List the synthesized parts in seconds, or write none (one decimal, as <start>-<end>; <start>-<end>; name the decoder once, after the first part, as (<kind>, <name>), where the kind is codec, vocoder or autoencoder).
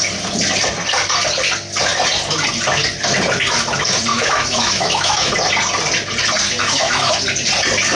4.1-5.3 (autoencoder, DAC-VAE); 6.6-7.1